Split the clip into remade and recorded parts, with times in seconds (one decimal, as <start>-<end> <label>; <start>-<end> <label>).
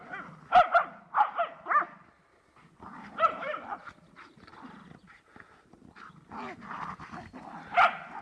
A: 0.0-8.2 recorded